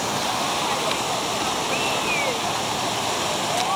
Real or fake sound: real